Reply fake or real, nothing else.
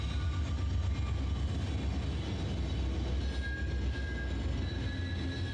real